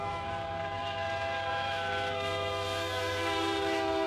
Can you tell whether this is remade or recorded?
remade